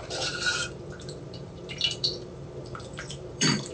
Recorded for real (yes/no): no